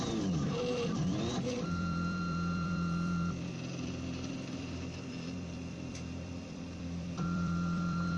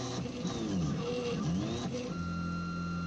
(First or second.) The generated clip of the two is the first